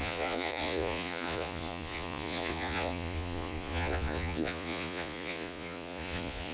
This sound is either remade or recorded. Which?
remade